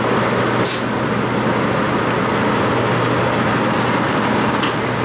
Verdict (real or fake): real